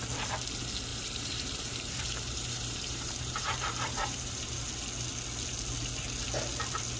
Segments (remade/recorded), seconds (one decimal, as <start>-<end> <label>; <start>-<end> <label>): 0.0-0.9 recorded; 0.9-4.7 remade; 4.7-7.0 recorded